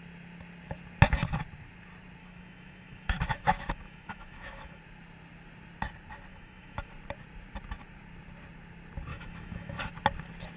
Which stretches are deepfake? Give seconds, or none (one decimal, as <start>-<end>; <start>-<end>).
2.2-4.8; 6.3-6.9; 9.1-9.8